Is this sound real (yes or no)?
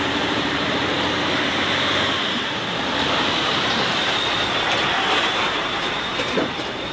no